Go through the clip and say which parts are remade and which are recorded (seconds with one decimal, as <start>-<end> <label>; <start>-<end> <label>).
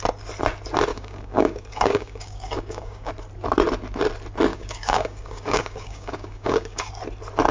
0.0-0.9 recorded; 0.9-3.1 remade; 3.1-4.5 recorded; 4.5-6.9 remade; 6.9-7.5 recorded